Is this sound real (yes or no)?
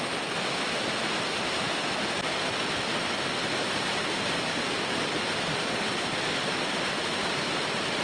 yes